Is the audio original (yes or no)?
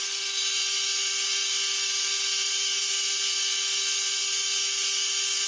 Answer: yes